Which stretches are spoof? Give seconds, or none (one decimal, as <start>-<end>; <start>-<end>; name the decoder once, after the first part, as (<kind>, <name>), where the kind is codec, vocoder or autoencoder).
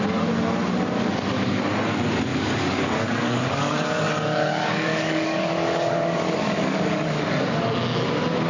2.3-7.2 (codec, DAC)